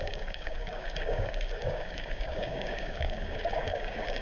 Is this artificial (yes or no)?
yes